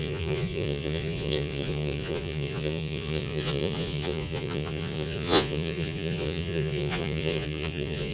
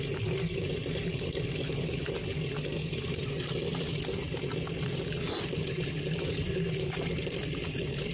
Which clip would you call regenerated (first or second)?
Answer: first